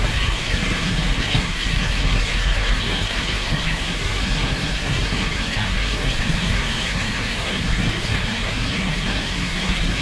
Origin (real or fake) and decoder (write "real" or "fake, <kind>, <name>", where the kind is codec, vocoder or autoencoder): fake, codec, SNAC